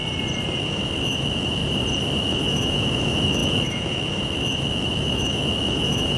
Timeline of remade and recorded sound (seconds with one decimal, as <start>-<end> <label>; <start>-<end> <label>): 0.0-0.6 recorded; 0.6-1.6 remade; 1.6-2.2 recorded; 2.2-6.2 remade